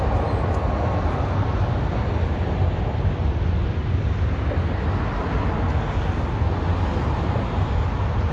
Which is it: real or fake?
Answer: real